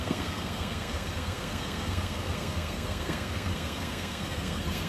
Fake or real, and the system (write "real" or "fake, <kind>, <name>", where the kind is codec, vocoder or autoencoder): fake, codec, SNAC